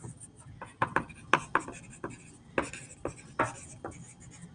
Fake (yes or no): no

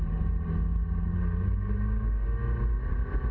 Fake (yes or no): no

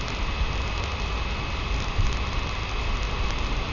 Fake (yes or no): no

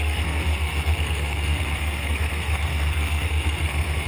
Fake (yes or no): yes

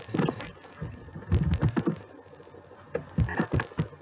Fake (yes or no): yes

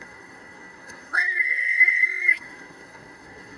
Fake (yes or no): yes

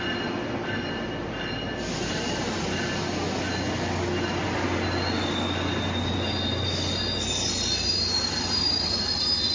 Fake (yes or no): no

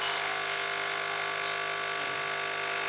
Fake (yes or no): no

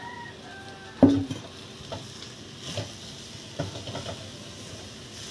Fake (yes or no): no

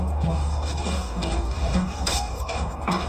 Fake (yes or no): yes